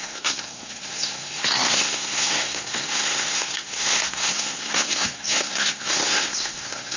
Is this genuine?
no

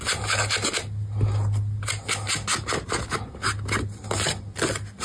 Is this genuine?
yes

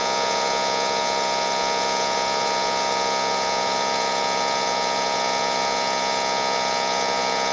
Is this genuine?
no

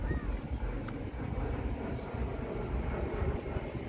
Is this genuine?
yes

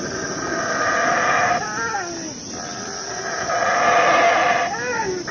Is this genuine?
yes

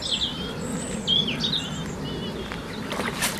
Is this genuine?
yes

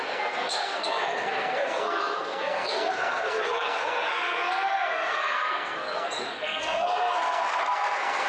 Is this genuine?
no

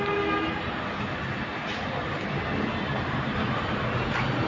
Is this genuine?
yes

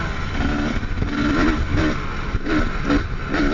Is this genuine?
yes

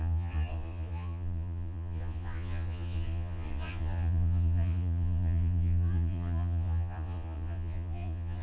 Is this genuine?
no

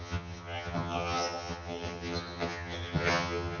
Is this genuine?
no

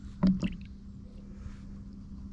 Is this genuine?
yes